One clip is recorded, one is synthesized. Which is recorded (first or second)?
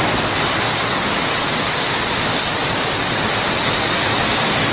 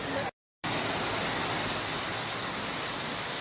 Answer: second